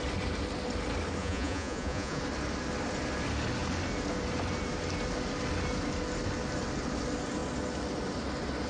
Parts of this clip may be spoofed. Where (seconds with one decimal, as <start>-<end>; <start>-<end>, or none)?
1.2-2.2